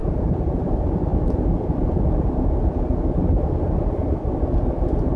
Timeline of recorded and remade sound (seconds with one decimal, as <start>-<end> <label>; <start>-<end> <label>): 0.0-0.6 remade; 0.6-5.2 recorded